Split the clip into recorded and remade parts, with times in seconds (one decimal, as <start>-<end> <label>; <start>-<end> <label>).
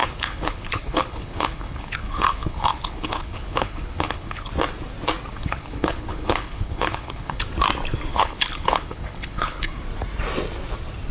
0.0-4.5 remade; 4.5-5.3 recorded; 5.3-7.4 remade; 7.4-8.1 recorded; 8.1-9.8 remade; 9.8-11.1 recorded